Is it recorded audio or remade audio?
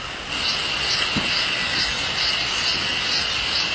recorded